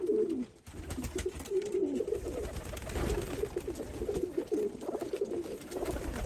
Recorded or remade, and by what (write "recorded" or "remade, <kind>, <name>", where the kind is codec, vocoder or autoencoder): recorded